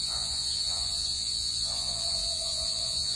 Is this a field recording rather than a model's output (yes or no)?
no